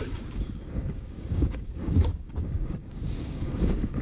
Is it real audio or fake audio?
fake